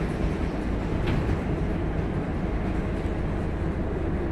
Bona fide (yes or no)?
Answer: yes